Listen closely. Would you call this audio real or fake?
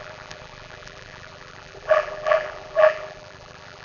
fake